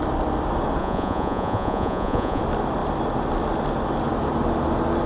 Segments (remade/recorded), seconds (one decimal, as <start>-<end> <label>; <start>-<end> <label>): 0.0-0.8 recorded; 0.8-2.4 remade; 2.4-5.1 recorded